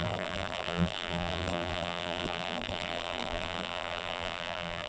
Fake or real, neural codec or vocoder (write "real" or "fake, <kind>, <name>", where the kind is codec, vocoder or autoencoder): fake, vocoder, BigVGAN v2